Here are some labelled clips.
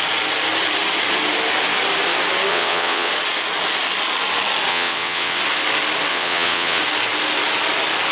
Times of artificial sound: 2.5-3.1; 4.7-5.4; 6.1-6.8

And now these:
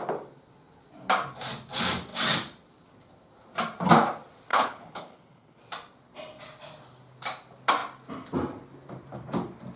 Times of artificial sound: 4.5-5.6

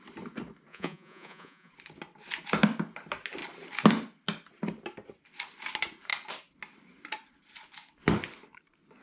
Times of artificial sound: 0.7-1.7

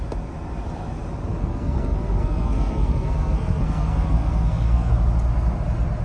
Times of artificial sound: 1.3-4.9

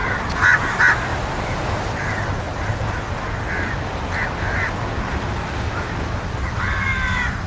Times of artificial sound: none

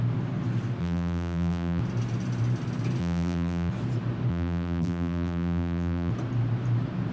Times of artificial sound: 0.8-1.8; 3.0-3.7; 4.3-6.1

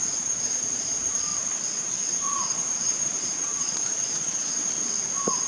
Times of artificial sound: 0.0-1.3; 2.1-4.6